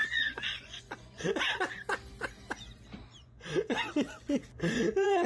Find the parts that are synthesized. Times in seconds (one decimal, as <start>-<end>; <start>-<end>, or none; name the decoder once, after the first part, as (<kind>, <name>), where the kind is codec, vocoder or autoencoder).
0.0-1.2 (vocoder, Vocos); 3.2-5.3